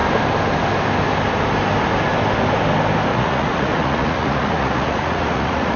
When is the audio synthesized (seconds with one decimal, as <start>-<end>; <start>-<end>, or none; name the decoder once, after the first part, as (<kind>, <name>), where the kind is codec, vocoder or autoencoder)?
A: 3.1-5.8 (vocoder, Vocos)